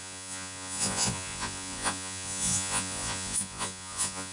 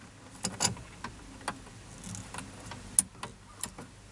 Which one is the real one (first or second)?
second